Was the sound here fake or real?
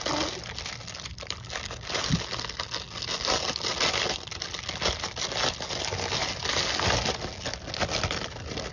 real